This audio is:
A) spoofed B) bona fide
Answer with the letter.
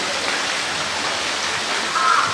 B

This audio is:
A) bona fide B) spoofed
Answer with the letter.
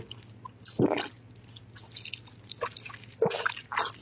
A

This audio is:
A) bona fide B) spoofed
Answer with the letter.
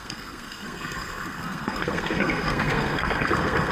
B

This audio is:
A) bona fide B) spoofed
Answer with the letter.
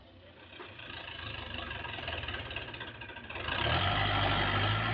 A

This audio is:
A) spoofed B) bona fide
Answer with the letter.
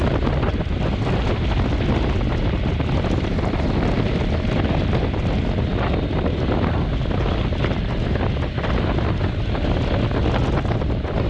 B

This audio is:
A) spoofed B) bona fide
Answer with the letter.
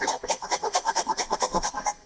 A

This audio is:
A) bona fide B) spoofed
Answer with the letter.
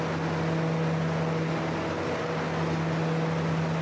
A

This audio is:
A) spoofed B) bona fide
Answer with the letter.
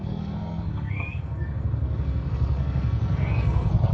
A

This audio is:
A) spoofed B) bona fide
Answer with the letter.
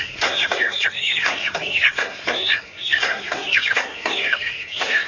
A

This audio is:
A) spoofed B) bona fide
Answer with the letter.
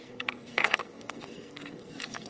A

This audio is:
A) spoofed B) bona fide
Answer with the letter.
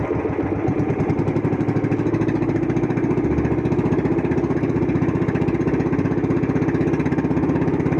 B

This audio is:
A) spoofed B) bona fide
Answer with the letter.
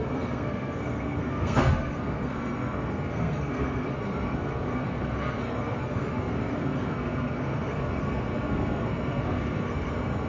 A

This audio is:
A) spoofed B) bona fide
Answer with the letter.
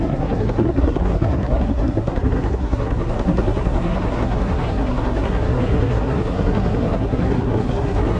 A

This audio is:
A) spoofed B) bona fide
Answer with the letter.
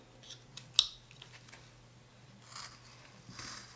B